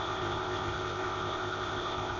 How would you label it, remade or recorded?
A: remade